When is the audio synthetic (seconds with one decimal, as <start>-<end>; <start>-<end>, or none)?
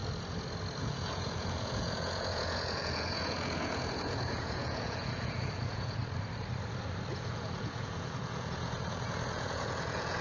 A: 0.8-6.0; 7.1-10.2